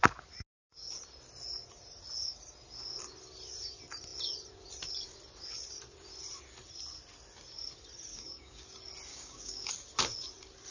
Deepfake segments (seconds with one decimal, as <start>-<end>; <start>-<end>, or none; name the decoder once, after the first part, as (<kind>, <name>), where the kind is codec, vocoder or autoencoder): 8.1-8.6 (codec, DAC); 9.1-9.7

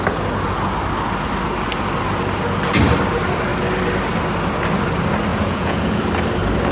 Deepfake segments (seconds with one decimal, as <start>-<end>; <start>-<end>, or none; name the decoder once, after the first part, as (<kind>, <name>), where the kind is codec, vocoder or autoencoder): 5.3-6.0 (vocoder, Vocos)

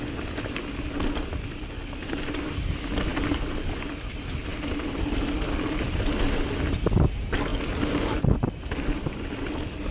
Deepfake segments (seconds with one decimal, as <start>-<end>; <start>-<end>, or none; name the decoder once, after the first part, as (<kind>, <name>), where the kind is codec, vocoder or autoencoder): none

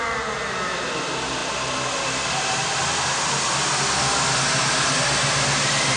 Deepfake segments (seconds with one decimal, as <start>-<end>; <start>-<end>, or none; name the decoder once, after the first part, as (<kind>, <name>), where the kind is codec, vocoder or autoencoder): none

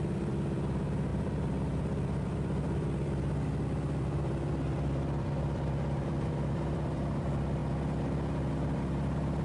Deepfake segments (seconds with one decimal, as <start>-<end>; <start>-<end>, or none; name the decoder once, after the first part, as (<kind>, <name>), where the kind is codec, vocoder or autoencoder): 0.0-7.6 (vocoder, BigVGAN v2); 8.5-9.4

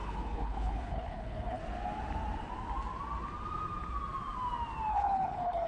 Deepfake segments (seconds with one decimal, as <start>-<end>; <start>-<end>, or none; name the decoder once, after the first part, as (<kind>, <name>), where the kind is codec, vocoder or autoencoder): 0.0-1.6 (codec, HILCodec); 4.9-5.7

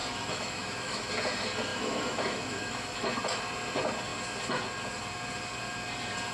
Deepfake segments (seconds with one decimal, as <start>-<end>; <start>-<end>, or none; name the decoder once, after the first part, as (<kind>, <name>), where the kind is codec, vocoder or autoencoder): 0.0-1.1 (autoencoder, DAC-VAE); 1.7-3.2